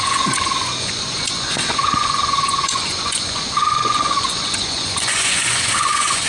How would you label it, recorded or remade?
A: remade